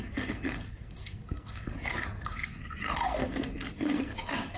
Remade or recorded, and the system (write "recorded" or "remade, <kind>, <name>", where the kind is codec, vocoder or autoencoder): remade, codec, SNAC